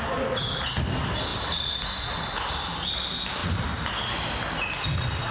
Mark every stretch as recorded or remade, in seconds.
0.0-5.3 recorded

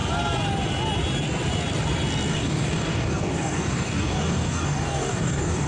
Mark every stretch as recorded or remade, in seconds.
0.0-2.3 recorded; 2.3-5.7 remade

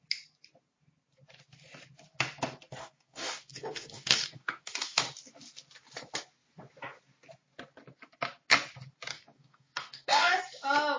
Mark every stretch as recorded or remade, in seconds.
0.0-2.8 recorded; 2.8-5.0 remade; 5.0-9.1 recorded; 9.1-10.4 remade; 10.4-11.0 recorded

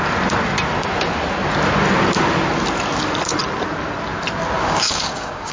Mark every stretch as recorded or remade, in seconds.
0.0-4.6 recorded; 4.6-5.5 remade

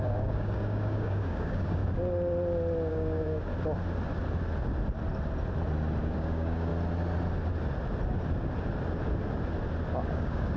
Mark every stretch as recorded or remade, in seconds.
0.0-1.8 remade; 1.8-2.9 recorded; 2.9-3.5 remade; 3.5-6.0 recorded; 6.0-6.7 remade; 6.7-10.1 recorded; 10.1-10.6 remade

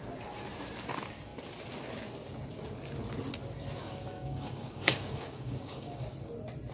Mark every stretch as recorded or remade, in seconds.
0.0-3.8 recorded; 3.8-6.1 remade; 6.1-6.7 recorded